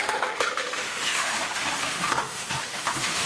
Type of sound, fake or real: fake